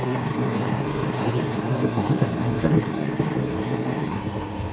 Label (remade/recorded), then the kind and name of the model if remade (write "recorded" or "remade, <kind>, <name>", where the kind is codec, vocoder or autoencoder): remade, codec, SNAC